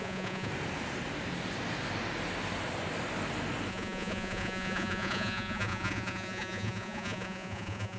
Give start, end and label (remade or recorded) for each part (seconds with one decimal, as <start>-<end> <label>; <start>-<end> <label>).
0.0-0.5 remade; 0.5-3.7 recorded; 3.7-8.0 remade